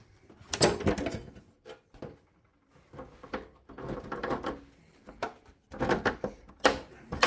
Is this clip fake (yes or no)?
no